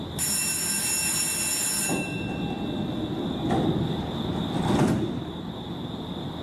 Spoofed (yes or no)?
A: no